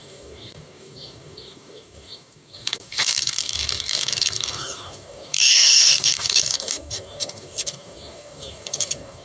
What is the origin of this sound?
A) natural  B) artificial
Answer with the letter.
B